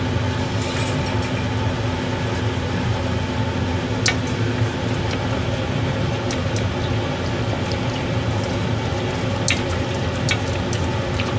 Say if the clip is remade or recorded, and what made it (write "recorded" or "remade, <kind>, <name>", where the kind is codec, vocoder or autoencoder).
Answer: recorded